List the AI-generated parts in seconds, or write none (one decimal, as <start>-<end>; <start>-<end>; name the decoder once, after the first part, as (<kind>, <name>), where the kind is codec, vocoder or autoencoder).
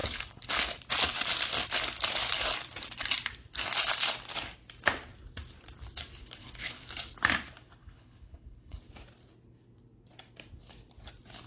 0.0-0.6 (codec, HILCodec); 6.2-6.9; 7.8-8.8